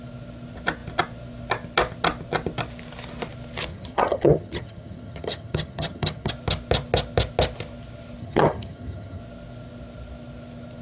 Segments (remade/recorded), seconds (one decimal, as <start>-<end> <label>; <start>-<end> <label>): 0.0-3.7 recorded; 3.7-6.3 remade; 6.3-8.2 recorded; 8.2-9.2 remade; 9.2-10.8 recorded